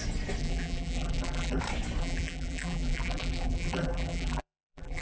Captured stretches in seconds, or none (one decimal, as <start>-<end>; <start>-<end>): 0.0-0.4; 1.6-2.0